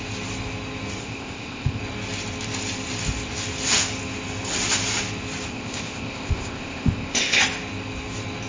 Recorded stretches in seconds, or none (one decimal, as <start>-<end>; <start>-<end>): 0.0-1.0; 1.8-5.5; 7.4-8.5